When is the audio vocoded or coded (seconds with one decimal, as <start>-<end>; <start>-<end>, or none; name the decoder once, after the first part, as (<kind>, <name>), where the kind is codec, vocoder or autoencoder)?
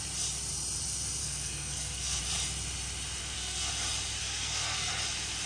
1.2-2.2 (codec, SNAC); 3.2-3.7; 4.2-4.9